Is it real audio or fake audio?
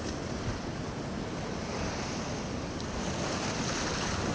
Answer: real